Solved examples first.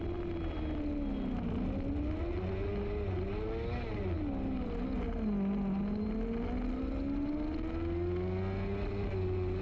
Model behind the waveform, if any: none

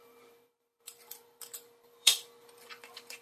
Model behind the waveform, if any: vocoder, BigVGAN v2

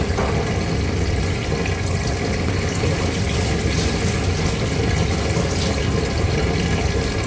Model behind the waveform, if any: none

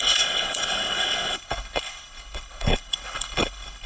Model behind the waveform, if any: codec, HILCodec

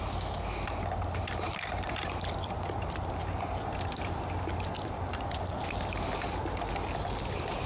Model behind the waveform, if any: none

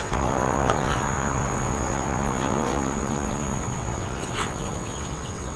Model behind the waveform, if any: vocoder, WaveNeXt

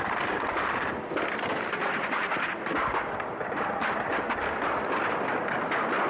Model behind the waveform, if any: none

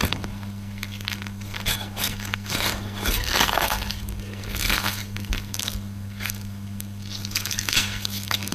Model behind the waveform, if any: codec, SNAC